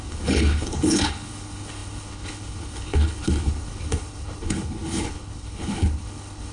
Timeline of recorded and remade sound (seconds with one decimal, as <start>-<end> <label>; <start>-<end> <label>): 0.0-6.5 remade